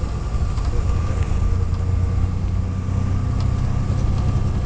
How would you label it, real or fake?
real